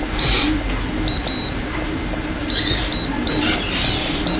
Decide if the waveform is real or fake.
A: real